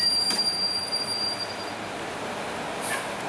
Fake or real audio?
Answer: fake